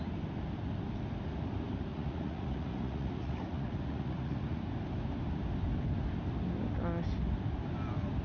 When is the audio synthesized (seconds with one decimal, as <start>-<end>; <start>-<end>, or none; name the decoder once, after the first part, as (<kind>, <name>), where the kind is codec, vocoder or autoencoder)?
1.9-4.6 (vocoder, Vocos)